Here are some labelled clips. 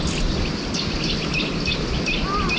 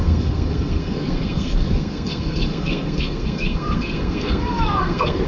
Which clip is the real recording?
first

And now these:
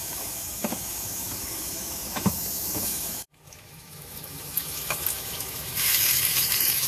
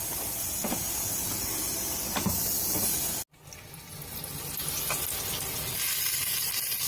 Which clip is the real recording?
second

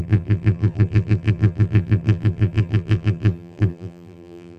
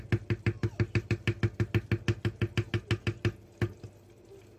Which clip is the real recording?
second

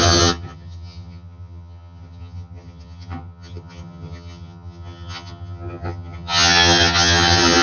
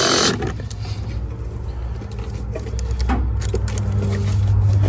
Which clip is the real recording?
second